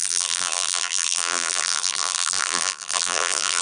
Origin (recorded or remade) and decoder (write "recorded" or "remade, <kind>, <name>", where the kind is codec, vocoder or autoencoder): remade, vocoder, BigVGAN v2